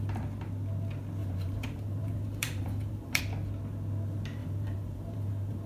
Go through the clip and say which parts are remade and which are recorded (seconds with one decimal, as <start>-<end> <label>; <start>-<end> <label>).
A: 0.0-1.2 recorded; 1.2-3.2 remade; 3.2-4.4 recorded; 4.4-5.7 remade